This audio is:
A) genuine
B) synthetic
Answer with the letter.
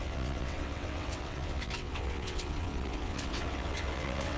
B